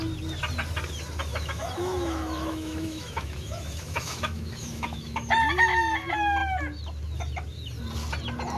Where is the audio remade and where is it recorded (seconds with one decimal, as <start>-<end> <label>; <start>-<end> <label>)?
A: 0.0-1.3 recorded; 1.3-5.3 remade; 5.3-8.6 recorded